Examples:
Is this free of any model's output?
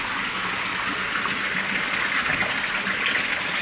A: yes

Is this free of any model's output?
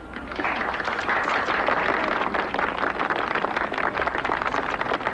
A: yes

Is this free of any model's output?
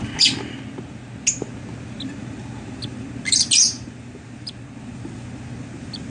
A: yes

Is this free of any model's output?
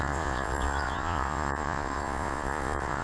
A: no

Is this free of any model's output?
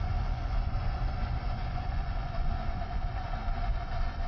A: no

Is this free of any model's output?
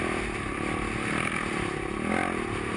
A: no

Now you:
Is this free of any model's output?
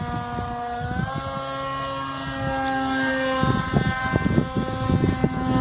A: yes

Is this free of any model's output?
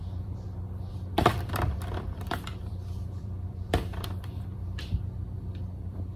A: no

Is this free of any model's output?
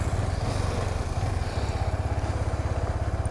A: yes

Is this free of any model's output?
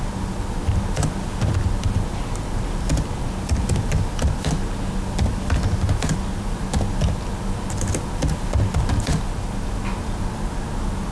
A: yes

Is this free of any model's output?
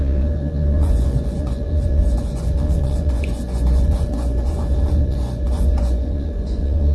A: no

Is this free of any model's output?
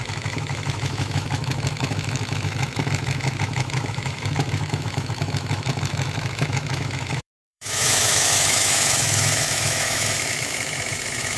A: no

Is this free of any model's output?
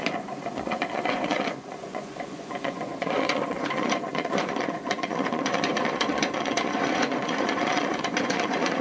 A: no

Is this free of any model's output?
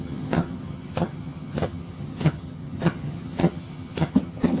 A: no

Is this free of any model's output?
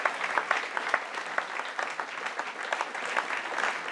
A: yes